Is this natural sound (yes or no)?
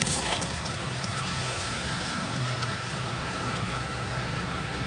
no